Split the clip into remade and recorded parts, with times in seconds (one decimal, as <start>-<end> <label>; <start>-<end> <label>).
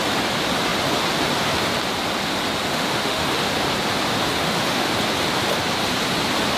0.0-2.7 recorded; 2.7-3.3 remade; 3.3-4.4 recorded; 4.4-4.9 remade; 4.9-6.6 recorded